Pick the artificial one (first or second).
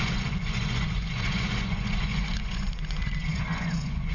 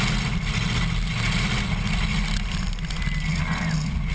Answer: first